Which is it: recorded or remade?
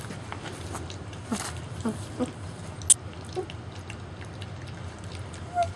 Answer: recorded